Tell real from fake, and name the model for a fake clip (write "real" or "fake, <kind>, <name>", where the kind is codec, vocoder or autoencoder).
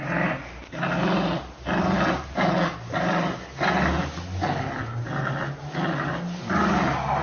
real